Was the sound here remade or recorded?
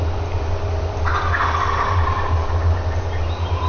recorded